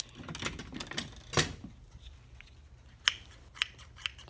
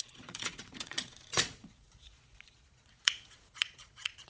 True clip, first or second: first